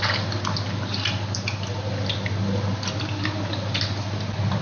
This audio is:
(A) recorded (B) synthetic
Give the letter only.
A